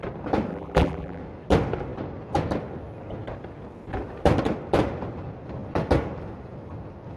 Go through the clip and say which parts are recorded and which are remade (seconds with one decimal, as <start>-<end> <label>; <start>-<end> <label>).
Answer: 0.0-0.5 recorded; 0.5-1.2 remade; 1.2-7.2 recorded